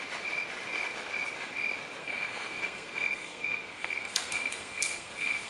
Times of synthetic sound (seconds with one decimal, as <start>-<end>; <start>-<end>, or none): 2.0-5.5